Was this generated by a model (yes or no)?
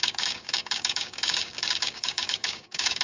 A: yes